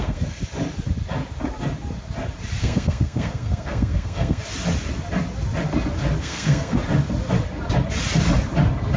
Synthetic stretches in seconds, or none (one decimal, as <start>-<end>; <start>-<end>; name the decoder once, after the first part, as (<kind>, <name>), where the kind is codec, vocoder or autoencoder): 0.0-0.4 (codec, SNAC); 2.6-4.4; 6.2-6.8

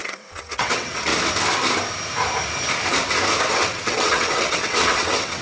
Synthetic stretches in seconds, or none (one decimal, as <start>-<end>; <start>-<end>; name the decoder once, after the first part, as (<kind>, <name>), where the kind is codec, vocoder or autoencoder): 0.0-1.1 (vocoder, WaveNeXt); 3.5-5.4

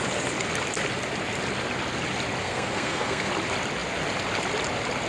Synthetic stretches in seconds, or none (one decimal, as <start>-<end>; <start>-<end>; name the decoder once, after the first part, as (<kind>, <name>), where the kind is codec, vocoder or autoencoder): 2.4-3.3 (codec, SNAC)

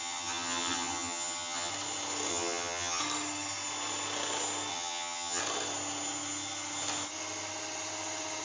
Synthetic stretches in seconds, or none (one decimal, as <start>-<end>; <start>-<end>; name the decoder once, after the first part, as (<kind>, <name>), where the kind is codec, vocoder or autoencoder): 0.0-1.7 (vocoder, HiFi-GAN); 2.3-3.0; 4.7-5.4

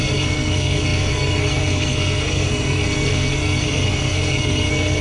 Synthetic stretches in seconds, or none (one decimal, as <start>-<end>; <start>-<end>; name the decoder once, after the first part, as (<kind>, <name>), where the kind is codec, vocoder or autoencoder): 0.0-5.0 (codec, SNAC)

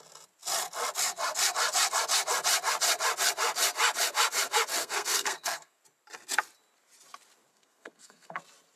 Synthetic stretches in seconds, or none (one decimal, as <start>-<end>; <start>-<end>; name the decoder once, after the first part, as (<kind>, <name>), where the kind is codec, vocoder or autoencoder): 4.8-5.8 (codec, SNAC); 7.5-8.4

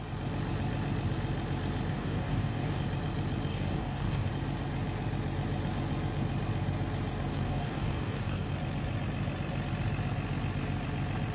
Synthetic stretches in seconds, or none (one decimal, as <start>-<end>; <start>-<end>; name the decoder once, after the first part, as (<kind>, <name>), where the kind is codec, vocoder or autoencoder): 1.9-2.8 (codec, DAC); 3.5-4.3; 7.3-8.5